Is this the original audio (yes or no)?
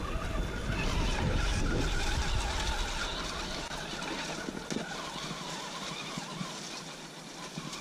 yes